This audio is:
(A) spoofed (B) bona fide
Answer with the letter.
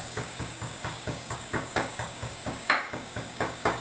A